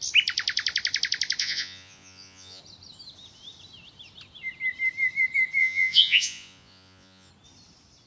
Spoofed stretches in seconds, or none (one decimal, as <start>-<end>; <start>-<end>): 1.4-2.6; 5.6-7.3